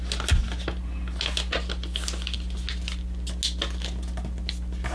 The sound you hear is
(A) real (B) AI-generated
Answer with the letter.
A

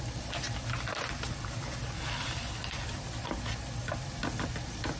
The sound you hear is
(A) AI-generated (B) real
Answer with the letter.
A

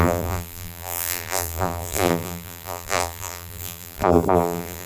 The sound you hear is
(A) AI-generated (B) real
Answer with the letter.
A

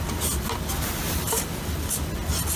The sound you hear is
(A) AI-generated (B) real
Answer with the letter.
B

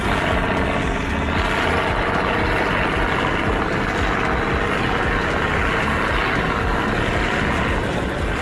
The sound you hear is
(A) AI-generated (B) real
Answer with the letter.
B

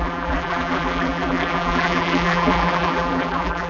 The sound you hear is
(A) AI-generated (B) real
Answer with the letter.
A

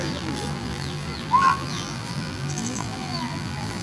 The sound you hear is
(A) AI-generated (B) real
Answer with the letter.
A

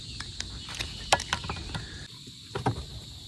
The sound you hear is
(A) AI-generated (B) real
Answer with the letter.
B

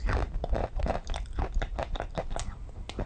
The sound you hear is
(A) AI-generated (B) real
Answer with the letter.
B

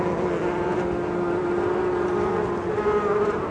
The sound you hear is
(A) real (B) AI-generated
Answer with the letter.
A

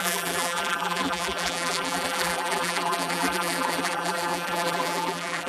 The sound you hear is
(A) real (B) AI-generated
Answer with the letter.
B